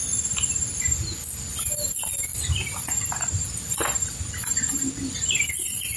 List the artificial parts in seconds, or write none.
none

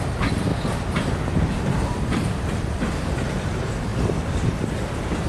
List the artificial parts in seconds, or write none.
0.0-0.5 (vocoder, BigVGAN v2); 1.5-3.9

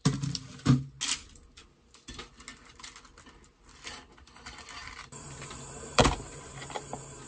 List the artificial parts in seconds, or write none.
none

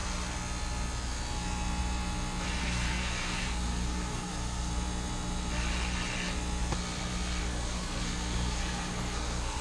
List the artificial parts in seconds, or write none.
2.6-4.7 (codec, SNAC); 7.4-9.6